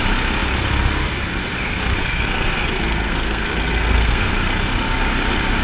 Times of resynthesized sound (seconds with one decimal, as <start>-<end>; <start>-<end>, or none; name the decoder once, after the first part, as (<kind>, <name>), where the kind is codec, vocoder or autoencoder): 2.0-4.3 (codec, SNAC)